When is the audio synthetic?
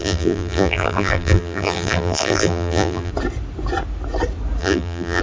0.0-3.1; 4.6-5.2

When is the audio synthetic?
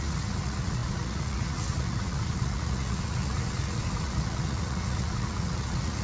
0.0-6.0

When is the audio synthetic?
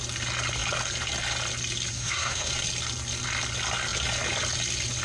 1.9-2.5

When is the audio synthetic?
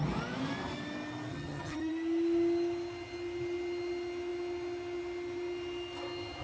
1.3-1.9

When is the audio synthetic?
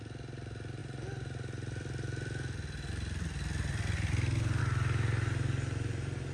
none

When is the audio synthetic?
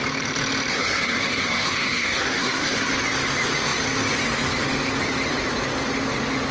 0.7-2.9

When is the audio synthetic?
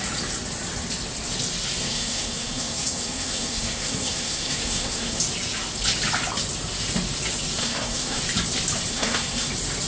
1.8-5.2; 7.6-8.2; 8.9-9.5